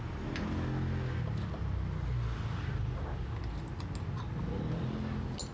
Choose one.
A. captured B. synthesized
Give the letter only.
A